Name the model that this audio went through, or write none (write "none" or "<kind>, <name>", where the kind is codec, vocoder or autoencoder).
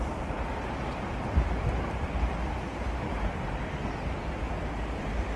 vocoder, BigVGAN v2